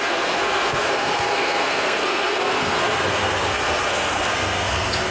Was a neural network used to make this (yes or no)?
yes